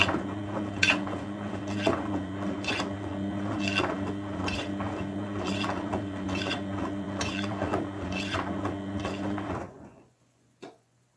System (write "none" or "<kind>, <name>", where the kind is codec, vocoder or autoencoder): vocoder, Vocos